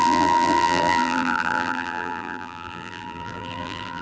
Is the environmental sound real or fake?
fake